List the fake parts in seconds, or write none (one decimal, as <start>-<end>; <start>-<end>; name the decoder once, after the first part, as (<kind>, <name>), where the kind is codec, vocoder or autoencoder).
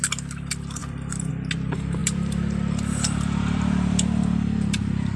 0.8-1.3 (vocoder, BigVGAN v2); 2.0-5.2